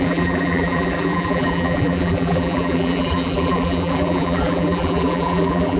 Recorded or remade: remade